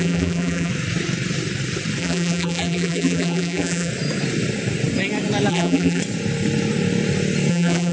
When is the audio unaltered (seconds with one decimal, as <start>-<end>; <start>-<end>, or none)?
0.7-2.0; 3.9-5.5; 6.0-7.5